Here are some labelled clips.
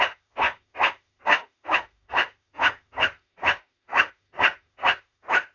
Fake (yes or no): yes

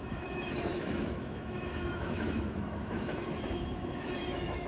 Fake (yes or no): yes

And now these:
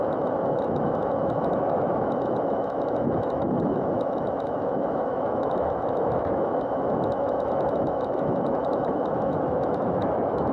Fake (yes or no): yes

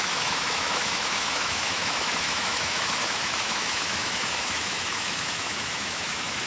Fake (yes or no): yes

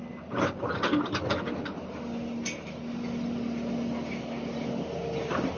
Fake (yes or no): no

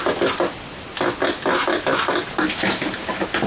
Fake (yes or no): no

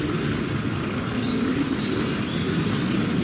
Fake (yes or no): no